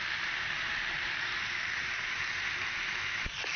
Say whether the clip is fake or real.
fake